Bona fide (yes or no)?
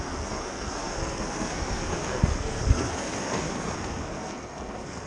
no